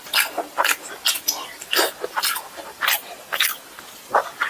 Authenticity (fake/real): real